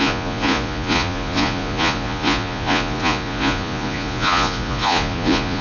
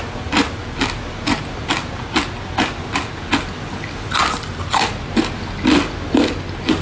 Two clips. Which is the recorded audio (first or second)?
second